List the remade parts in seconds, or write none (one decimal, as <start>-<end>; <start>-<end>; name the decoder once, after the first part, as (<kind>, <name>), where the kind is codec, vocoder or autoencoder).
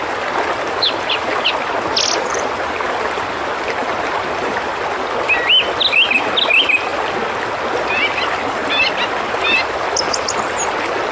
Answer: none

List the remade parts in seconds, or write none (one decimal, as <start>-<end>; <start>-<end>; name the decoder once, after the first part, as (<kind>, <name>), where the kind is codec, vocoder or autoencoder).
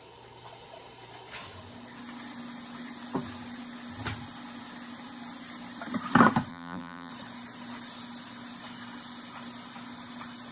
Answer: 6.5-7.1 (vocoder, BigVGAN v2)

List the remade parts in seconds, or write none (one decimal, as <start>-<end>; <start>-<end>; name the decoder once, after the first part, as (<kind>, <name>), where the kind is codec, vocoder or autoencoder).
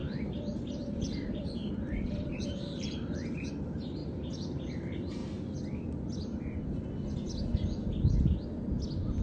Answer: 0.0-4.0 (vocoder, BigVGAN v2); 4.7-5.2